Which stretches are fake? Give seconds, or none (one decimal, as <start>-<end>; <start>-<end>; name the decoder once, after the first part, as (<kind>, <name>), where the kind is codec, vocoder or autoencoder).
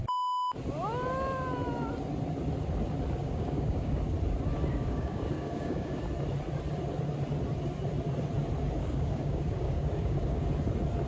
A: 3.2-4.0 (codec, DAC); 4.7-6.0; 8.8-10.4